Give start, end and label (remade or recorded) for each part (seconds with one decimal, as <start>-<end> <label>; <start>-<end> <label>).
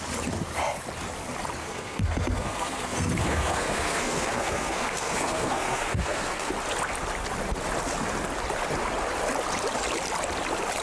0.0-1.6 recorded; 1.6-6.5 remade; 6.5-10.8 recorded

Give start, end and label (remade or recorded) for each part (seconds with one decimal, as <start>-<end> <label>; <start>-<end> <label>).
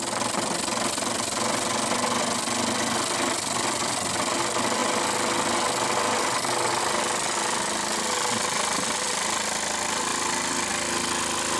0.0-11.6 recorded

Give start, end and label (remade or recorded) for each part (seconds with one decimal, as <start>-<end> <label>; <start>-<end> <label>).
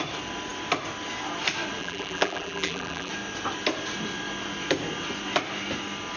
0.0-1.8 recorded; 1.8-3.1 remade; 3.1-6.2 recorded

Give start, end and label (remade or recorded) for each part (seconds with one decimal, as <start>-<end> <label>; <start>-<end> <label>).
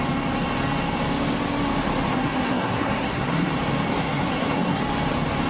0.0-2.1 recorded; 2.1-3.5 remade; 3.5-3.9 recorded; 3.9-4.8 remade; 4.8-5.5 recorded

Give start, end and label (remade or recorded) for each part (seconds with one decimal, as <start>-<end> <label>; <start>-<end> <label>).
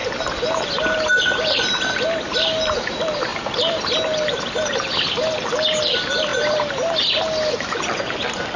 0.0-3.3 recorded; 3.3-3.8 remade; 3.8-8.6 recorded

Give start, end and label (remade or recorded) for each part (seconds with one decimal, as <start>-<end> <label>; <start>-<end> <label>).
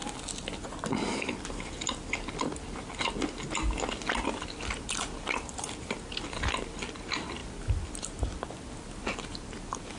0.0-10.0 recorded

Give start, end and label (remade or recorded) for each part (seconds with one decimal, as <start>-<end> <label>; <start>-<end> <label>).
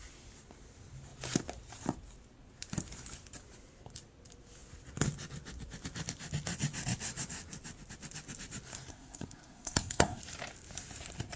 0.0-8.9 recorded; 8.9-10.2 remade; 10.2-11.4 recorded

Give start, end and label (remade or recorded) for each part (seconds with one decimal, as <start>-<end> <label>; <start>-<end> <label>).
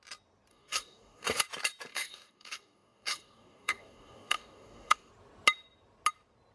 0.0-0.5 recorded; 0.5-1.4 remade; 1.4-1.9 recorded; 1.9-5.1 remade; 5.1-6.5 recorded